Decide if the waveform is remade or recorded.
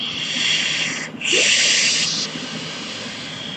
recorded